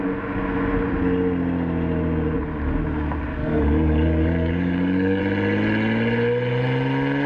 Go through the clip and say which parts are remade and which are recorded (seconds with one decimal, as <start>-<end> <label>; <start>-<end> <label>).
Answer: 0.0-3.4 recorded; 3.4-5.2 remade; 5.2-7.3 recorded